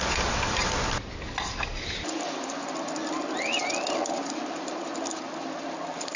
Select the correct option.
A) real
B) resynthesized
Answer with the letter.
A